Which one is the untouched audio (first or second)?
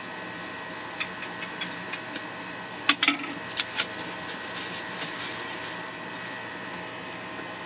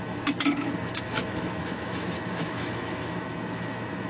first